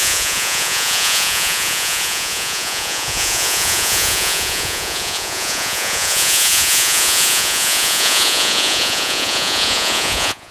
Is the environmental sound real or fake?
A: fake